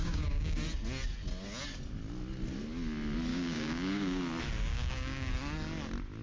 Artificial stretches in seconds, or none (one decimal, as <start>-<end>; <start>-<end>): 0.0-0.6; 3.3-4.2; 4.7-5.3